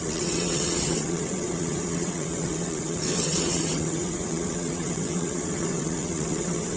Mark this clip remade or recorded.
remade